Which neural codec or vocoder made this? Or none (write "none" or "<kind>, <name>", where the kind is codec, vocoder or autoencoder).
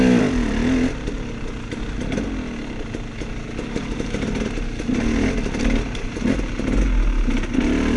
none